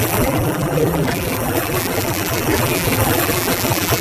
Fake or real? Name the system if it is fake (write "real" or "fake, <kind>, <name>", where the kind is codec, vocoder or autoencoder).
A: fake, vocoder, BigVGAN v2